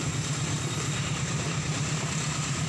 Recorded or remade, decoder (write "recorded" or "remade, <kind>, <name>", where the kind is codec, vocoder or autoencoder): remade, vocoder, BigVGAN v2